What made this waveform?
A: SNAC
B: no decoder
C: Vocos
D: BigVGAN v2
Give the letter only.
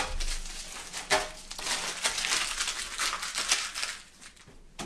B